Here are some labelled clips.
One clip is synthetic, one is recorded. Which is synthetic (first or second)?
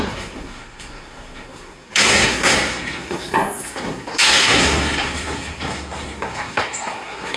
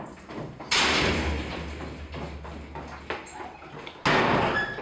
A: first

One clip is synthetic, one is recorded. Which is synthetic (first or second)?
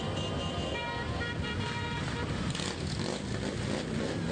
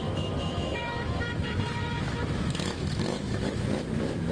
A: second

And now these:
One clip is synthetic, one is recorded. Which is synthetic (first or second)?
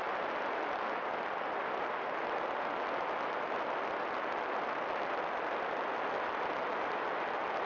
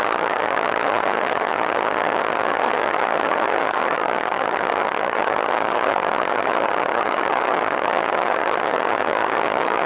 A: second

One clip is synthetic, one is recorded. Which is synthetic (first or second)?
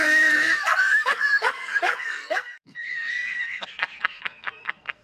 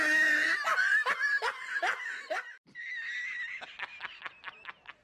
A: first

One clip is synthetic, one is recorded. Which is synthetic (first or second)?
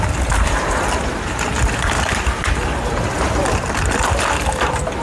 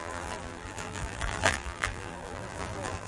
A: second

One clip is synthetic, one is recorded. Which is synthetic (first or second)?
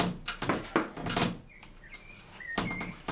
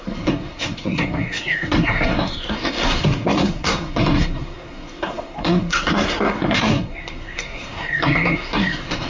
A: second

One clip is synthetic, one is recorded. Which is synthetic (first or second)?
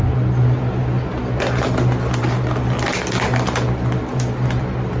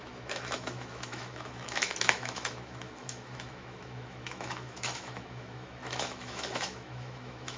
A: second